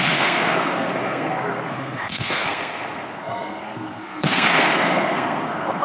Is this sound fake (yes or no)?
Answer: yes